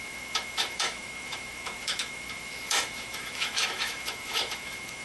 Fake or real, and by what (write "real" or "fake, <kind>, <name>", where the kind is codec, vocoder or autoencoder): fake, autoencoder, DAC-VAE